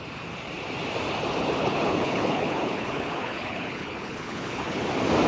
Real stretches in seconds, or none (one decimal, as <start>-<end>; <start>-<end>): 0.0-1.6; 4.8-5.3

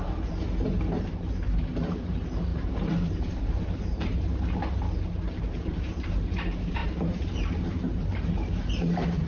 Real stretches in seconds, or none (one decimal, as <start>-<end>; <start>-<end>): 4.3-5.4

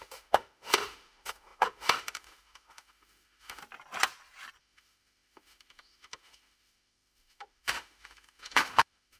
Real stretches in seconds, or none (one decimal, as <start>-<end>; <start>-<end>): 3.6-4.6

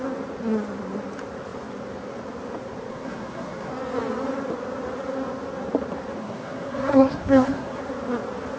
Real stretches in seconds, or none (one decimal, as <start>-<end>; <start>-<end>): 0.0-2.9; 3.7-6.2; 7.8-8.6

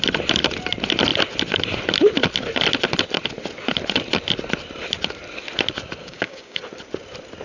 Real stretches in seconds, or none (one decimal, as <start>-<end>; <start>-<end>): 0.0-6.0; 6.6-7.4